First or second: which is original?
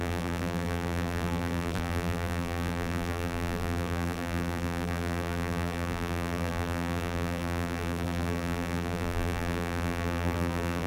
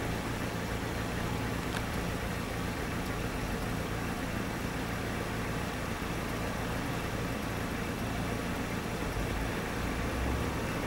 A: second